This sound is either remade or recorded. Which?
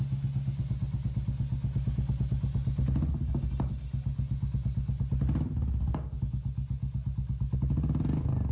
recorded